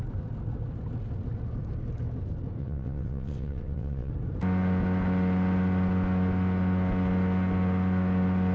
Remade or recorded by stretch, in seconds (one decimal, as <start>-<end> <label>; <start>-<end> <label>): 0.0-2.6 recorded; 2.6-4.1 remade; 4.1-8.5 recorded